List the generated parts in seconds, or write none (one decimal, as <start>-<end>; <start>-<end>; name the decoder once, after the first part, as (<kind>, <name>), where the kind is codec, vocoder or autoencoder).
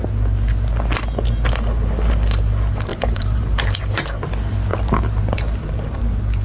2.9-3.9 (vocoder, BigVGAN v2); 4.7-6.0